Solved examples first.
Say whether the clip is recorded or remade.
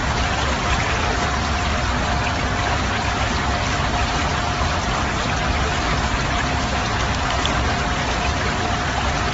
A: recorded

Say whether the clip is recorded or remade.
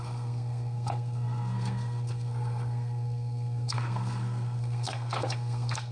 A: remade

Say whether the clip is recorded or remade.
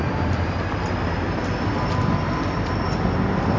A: recorded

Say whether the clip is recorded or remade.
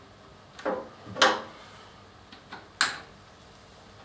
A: recorded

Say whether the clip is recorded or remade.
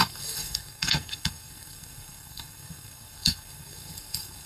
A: remade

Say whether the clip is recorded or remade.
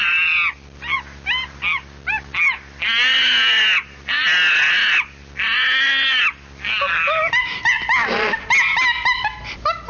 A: recorded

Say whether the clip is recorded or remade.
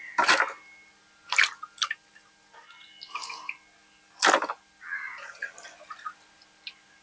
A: recorded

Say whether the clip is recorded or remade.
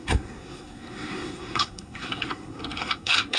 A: remade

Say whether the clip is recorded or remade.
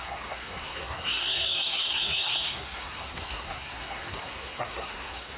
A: remade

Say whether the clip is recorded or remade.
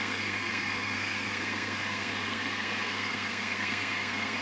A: remade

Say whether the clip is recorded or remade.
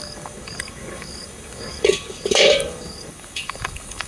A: remade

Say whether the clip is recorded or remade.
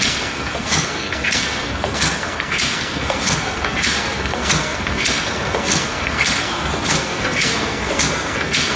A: remade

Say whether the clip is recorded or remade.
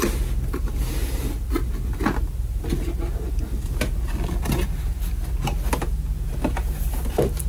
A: recorded